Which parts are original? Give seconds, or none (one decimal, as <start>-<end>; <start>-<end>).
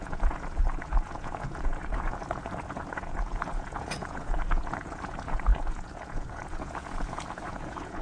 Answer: none